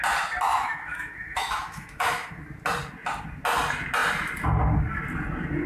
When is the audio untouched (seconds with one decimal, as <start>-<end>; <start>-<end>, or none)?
0.0-0.5; 2.4-5.7